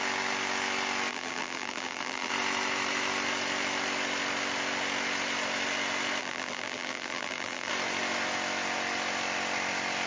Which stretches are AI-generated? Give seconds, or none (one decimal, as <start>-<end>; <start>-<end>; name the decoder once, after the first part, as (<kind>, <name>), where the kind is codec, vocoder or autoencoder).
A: 1.1-2.3 (vocoder, BigVGAN v2); 6.2-7.7